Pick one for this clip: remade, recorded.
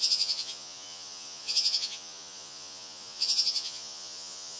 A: remade